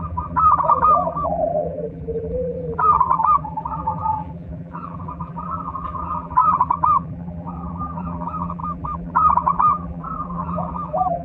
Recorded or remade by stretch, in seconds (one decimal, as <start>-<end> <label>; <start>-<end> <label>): 0.0-11.2 remade